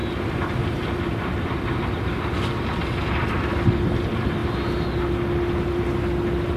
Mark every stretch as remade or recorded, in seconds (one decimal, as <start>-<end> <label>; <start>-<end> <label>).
0.0-6.6 recorded